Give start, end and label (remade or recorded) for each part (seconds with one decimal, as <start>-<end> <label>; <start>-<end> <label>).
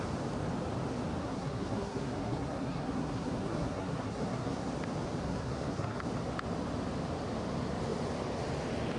0.0-1.2 recorded; 1.2-4.7 remade; 4.7-5.2 recorded; 5.2-6.0 remade; 6.0-9.0 recorded